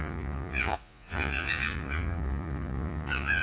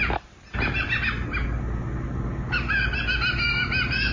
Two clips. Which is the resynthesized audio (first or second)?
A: first